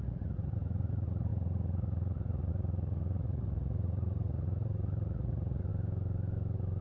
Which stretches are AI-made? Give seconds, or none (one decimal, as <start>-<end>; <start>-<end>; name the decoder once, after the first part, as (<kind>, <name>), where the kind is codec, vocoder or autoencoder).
0.0-5.7 (vocoder, Vocos)